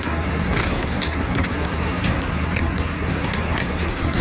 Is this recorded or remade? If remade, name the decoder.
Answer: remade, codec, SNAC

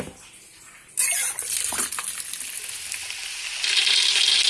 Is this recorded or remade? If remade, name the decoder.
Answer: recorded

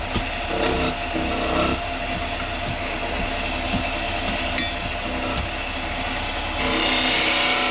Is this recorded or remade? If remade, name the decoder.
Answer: recorded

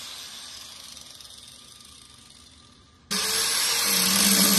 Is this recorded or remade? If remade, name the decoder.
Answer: recorded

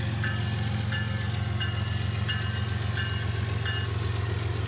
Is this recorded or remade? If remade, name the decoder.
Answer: recorded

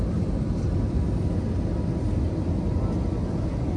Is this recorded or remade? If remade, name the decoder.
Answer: recorded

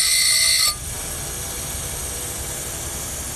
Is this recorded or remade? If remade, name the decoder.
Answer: recorded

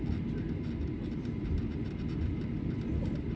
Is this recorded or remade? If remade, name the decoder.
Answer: recorded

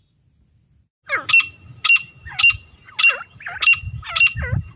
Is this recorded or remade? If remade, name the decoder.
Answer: recorded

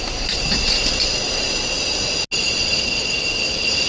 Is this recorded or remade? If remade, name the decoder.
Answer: recorded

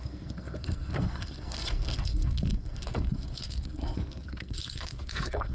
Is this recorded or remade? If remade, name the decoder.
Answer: remade, codec, SNAC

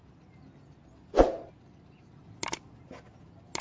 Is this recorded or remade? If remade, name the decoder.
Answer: recorded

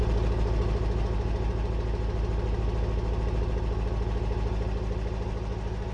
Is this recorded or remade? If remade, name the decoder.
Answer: recorded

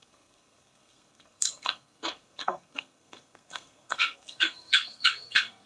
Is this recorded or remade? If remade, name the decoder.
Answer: remade, codec, SNAC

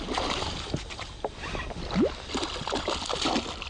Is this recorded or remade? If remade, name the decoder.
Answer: recorded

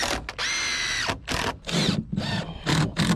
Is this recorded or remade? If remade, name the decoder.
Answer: recorded